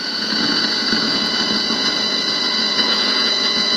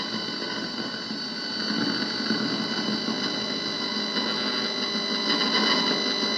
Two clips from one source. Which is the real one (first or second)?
second